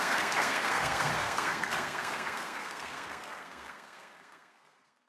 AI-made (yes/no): yes